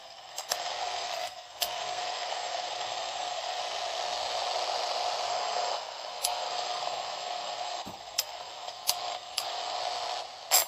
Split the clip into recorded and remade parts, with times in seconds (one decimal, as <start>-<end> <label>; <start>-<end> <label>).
0.0-3.6 remade; 3.6-5.3 recorded; 5.3-9.8 remade; 9.8-10.7 recorded